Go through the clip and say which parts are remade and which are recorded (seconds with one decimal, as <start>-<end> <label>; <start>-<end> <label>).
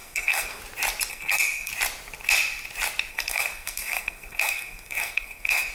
0.0-0.6 remade; 0.6-1.1 recorded; 1.1-1.7 remade; 1.7-3.1 recorded; 3.1-5.7 remade